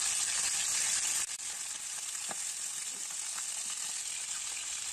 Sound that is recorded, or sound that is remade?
recorded